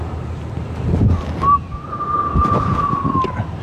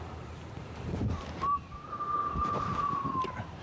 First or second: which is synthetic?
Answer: second